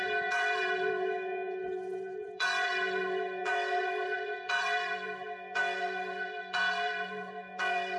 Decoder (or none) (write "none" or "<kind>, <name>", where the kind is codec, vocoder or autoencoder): vocoder, Vocos